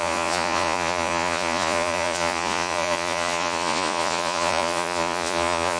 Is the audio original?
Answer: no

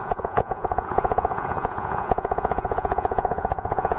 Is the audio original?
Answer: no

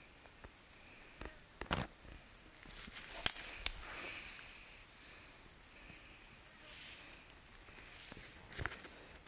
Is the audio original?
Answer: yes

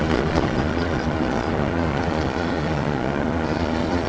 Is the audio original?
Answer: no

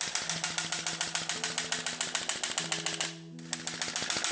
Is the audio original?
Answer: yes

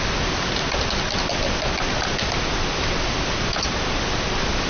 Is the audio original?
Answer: yes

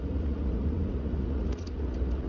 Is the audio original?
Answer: no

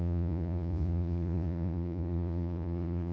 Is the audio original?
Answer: no